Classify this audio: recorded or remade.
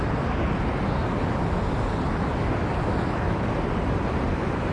recorded